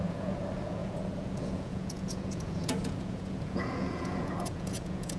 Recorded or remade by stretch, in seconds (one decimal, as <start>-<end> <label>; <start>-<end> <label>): 0.0-5.2 remade